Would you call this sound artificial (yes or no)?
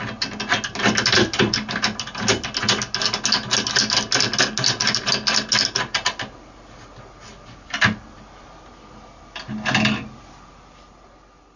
no